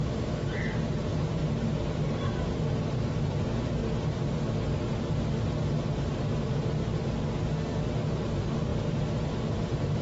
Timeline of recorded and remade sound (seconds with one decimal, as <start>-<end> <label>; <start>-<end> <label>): 0.0-3.8 remade; 3.8-5.7 recorded; 5.7-6.8 remade; 6.8-8.0 recorded; 8.0-10.0 remade